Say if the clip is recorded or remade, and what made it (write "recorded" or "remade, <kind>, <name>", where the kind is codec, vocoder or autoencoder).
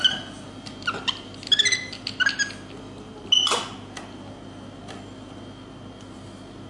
recorded